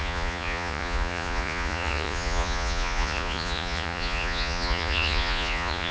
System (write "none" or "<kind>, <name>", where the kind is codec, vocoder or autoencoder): vocoder, Vocos